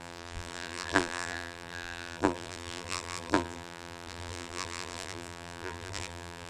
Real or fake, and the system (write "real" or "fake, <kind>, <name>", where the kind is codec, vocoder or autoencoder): fake, vocoder, BigVGAN v2